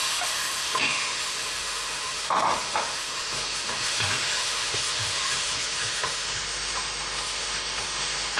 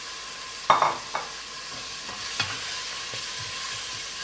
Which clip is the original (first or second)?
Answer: second